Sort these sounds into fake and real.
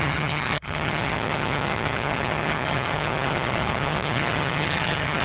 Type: fake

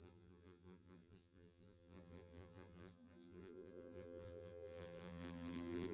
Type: fake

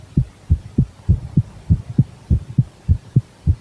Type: real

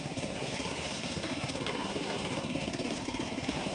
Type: fake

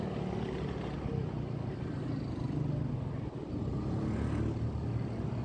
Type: real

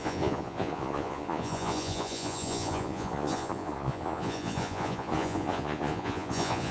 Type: fake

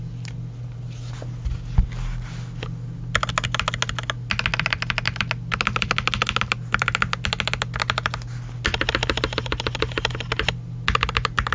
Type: real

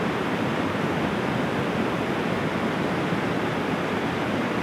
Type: real